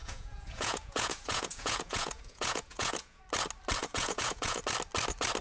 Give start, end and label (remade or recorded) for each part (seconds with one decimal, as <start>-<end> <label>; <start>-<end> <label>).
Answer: 0.0-3.2 remade; 3.2-3.8 recorded; 3.8-4.6 remade; 4.6-5.4 recorded